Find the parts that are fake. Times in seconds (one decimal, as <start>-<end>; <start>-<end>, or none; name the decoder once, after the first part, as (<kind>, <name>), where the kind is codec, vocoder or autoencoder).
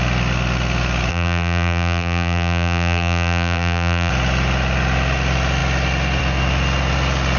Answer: 1.1-4.1 (vocoder, BigVGAN v2)